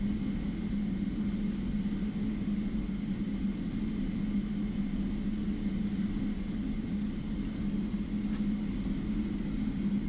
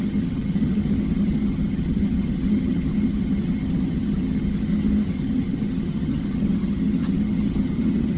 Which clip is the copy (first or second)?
second